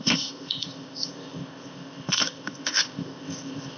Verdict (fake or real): fake